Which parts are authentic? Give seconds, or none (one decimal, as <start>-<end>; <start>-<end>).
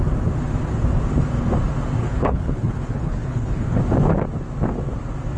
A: 0.0-2.0; 3.8-5.4